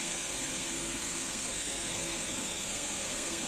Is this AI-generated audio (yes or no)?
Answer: yes